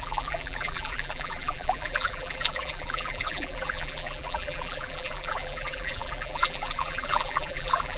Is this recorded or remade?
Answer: remade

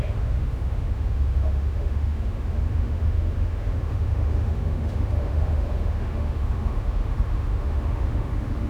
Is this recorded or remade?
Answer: remade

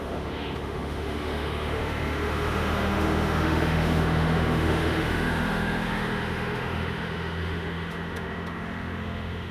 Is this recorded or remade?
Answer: remade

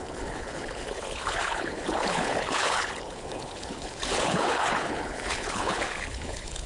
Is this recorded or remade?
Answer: remade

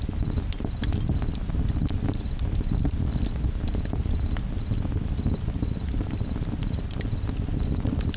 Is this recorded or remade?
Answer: recorded